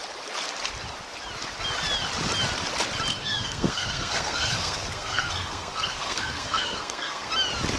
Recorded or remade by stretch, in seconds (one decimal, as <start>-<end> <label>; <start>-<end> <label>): 0.0-3.1 recorded; 3.1-7.3 remade; 7.3-7.8 recorded